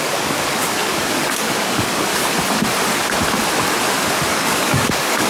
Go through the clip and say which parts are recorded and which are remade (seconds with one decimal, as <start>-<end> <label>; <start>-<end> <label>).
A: 0.0-2.1 remade; 2.1-4.3 recorded; 4.3-5.3 remade